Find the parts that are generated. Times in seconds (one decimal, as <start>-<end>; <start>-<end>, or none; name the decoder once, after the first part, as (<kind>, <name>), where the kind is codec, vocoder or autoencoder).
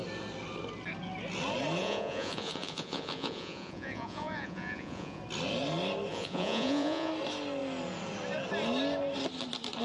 1.8-5.2 (vocoder, Vocos); 6.1-7.1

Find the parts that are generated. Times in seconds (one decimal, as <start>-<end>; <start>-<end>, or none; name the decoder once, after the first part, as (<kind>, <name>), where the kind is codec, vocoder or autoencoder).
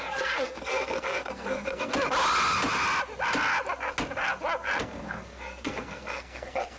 0.0-1.9 (codec, SNAC); 4.8-6.8